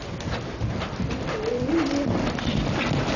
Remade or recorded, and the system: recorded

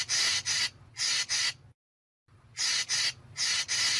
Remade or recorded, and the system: recorded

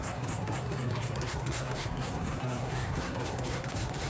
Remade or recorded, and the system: remade, codec, SNAC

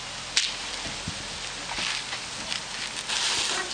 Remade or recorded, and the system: recorded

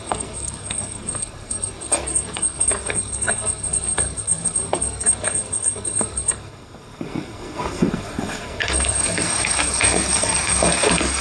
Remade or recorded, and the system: remade, codec, SNAC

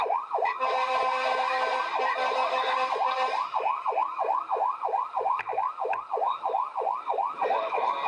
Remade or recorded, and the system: recorded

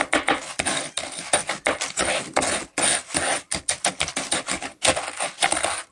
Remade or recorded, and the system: recorded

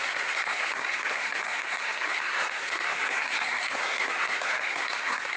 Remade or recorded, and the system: remade, codec, SNAC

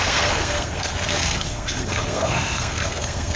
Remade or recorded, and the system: remade, codec, SNAC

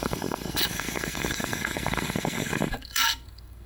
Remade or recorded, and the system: remade, codec, SNAC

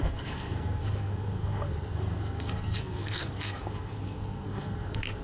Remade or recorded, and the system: remade, codec, SNAC